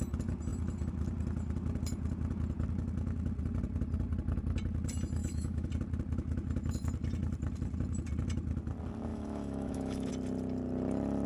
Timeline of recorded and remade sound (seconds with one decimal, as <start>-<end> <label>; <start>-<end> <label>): 0.0-5.2 recorded; 5.2-5.7 remade; 5.7-9.1 recorded; 9.1-10.1 remade; 10.1-11.3 recorded